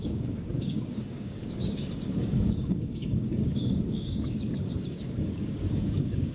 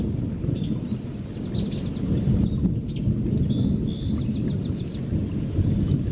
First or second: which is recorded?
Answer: second